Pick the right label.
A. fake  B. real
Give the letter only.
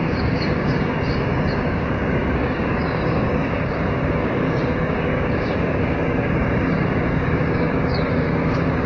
A